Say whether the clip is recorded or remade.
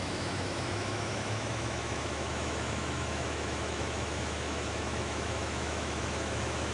remade